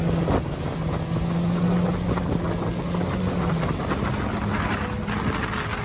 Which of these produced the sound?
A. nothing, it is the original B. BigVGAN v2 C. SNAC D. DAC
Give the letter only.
A